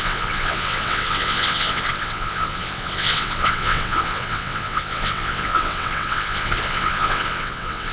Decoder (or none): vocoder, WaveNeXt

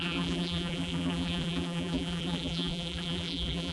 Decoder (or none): vocoder, BigVGAN v2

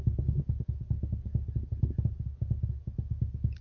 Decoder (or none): none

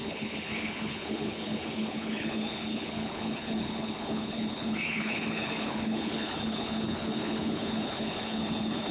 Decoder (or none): codec, HILCodec